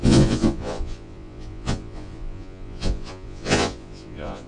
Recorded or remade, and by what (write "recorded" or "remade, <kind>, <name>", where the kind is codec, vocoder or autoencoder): remade, vocoder, Vocos